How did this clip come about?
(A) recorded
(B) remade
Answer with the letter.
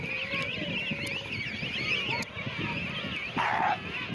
A